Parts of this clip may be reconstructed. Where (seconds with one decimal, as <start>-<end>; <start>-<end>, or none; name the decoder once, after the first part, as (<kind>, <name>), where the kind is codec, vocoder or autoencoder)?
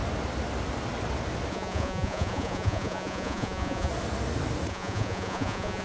1.5-3.9 (vocoder, Vocos); 4.7-5.8